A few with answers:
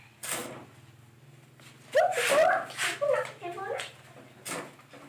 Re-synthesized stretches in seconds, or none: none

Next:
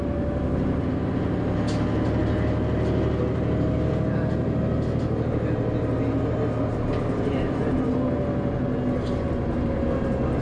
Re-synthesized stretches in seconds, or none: none